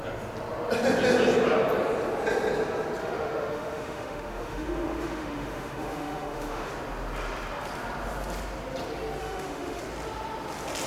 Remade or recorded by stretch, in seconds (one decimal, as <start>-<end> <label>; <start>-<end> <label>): 0.0-3.0 recorded; 3.0-6.7 remade; 6.7-9.2 recorded; 9.2-9.8 remade; 9.8-10.9 recorded